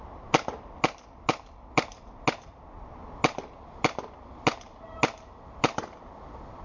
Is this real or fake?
real